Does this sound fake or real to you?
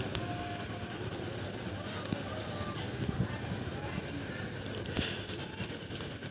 real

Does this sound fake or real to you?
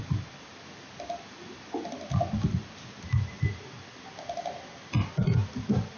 real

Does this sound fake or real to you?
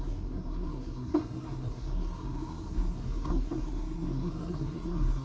fake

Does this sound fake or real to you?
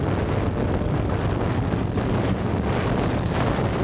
real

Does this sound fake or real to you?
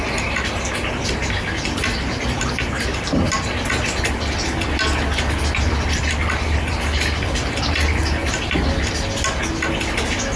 real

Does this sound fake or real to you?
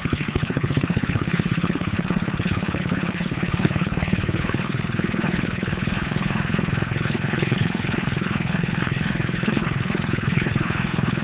fake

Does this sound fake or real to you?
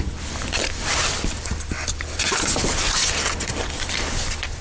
fake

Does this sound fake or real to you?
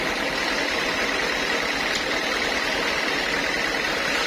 real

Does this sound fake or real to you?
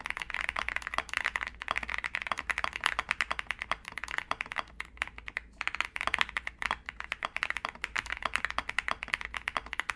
real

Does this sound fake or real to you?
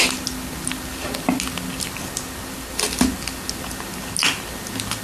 real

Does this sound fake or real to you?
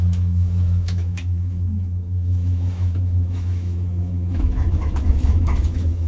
fake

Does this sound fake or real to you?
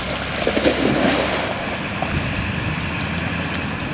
real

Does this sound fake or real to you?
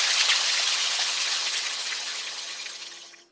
fake